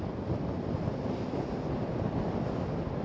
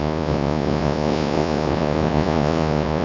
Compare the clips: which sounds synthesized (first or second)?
second